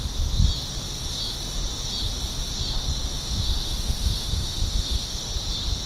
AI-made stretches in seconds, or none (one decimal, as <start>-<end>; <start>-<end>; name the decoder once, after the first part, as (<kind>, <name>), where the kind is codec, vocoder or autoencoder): 3.1-5.3 (autoencoder, DAC-VAE)

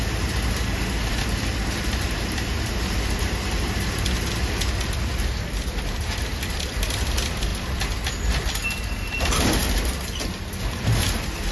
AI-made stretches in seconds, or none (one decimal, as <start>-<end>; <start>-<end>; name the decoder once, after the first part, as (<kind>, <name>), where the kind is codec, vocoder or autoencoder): none

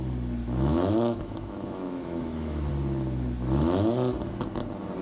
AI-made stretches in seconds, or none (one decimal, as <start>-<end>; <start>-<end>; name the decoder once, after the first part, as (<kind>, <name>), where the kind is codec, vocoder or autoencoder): 0.4-2.7 (autoencoder, DAC-VAE)